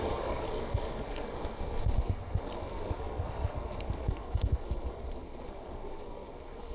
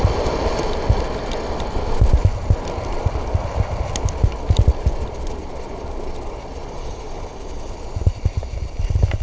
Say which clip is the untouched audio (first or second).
second